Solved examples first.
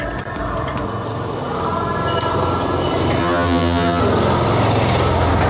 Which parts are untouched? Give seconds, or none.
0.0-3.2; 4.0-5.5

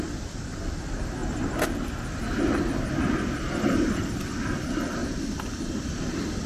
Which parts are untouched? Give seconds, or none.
1.2-2.6; 5.0-6.0

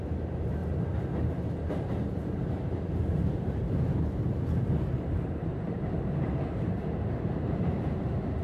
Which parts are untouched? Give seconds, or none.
0.6-1.2

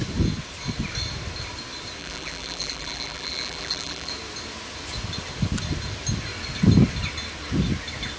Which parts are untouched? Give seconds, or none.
0.0-2.0; 4.1-8.2

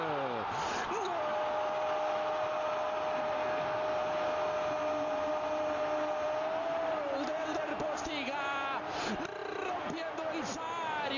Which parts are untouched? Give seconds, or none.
0.0-11.2